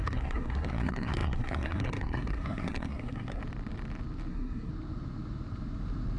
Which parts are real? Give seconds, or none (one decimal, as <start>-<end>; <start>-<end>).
3.4-4.3; 4.7-6.2